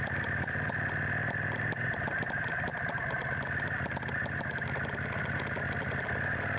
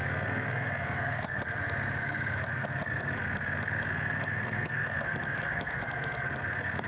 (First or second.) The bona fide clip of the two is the first